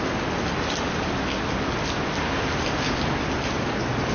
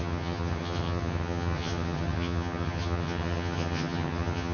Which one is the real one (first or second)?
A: first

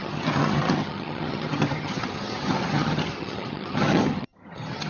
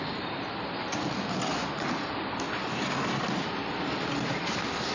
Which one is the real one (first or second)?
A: second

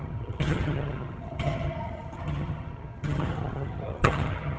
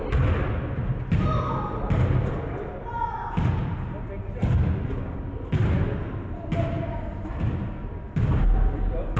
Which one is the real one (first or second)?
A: second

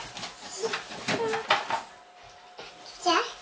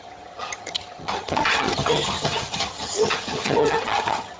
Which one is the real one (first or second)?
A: first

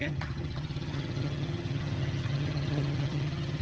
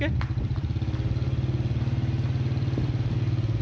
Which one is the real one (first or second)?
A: second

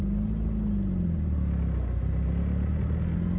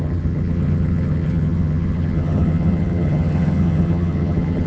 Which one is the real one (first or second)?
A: first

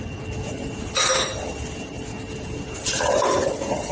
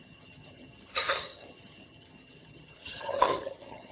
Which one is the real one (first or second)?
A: first